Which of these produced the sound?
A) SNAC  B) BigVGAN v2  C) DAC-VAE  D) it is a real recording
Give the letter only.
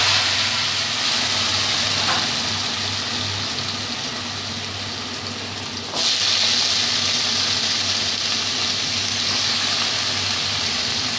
D